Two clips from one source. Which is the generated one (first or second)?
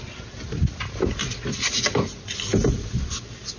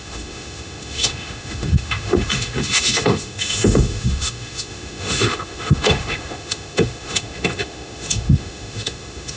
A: second